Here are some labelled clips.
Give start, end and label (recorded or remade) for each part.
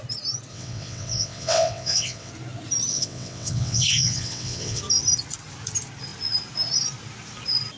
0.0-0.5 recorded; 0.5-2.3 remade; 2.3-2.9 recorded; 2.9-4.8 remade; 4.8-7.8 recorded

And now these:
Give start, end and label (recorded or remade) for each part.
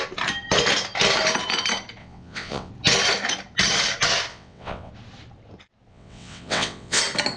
0.0-2.0 recorded; 2.0-2.7 remade; 2.7-4.3 recorded; 4.3-4.9 remade; 4.9-5.9 recorded; 5.9-7.0 remade; 7.0-7.4 recorded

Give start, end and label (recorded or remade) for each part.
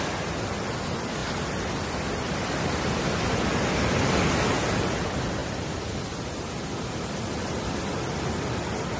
0.0-9.0 recorded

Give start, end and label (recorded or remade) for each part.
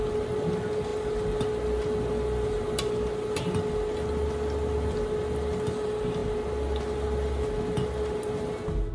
0.0-8.9 recorded